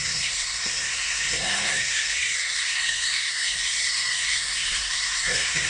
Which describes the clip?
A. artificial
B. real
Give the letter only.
A